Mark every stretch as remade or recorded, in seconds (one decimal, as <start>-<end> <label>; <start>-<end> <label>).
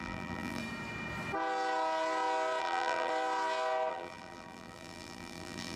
0.0-0.6 remade; 0.6-2.6 recorded; 2.6-3.1 remade; 3.1-3.9 recorded; 3.9-5.8 remade